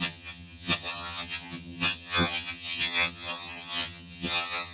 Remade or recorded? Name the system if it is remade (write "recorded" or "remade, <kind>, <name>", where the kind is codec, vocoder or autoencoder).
remade, vocoder, HiFi-GAN